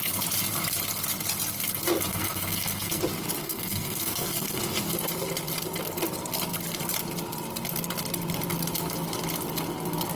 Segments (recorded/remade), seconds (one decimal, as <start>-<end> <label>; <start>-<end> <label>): 0.0-2.1 recorded; 2.1-3.0 remade; 3.0-3.4 recorded; 3.4-4.6 remade; 4.6-10.2 recorded